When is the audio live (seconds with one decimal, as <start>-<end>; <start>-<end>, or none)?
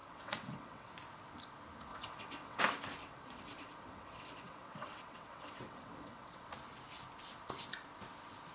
0.9-1.9; 2.6-3.0; 6.5-8.5